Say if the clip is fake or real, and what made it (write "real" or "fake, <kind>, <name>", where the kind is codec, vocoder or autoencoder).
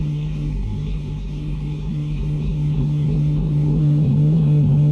fake, codec, SNAC